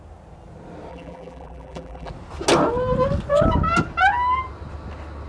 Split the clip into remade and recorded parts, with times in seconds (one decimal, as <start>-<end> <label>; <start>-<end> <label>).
0.0-0.9 recorded; 0.9-2.1 remade; 2.1-5.3 recorded